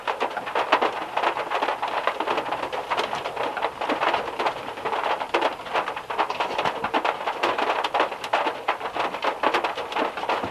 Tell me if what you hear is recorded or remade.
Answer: recorded